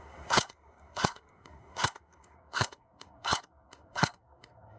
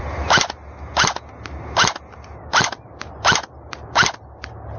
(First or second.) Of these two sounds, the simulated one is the first